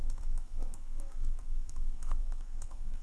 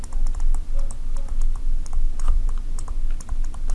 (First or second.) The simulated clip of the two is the first